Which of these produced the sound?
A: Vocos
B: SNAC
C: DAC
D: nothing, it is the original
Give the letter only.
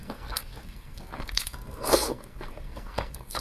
B